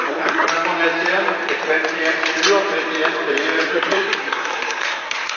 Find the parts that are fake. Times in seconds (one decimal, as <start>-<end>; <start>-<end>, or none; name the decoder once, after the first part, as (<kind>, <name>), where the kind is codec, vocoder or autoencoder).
0.0-0.5 (codec, SNAC); 3.7-5.4